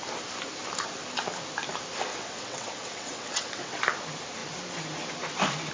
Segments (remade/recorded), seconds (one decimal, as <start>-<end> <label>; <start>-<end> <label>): 0.0-2.1 recorded; 2.1-3.8 remade; 3.8-5.7 recorded